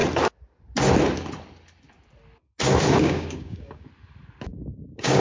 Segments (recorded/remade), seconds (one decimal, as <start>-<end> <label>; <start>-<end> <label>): 0.0-3.0 recorded; 3.0-3.9 remade; 3.9-4.5 recorded; 4.5-5.2 remade